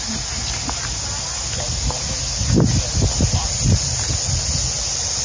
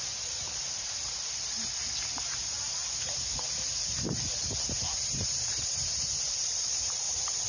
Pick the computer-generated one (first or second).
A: second